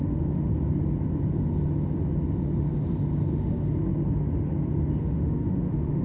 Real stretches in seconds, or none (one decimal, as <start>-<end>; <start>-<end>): 0.5-3.3; 3.9-5.0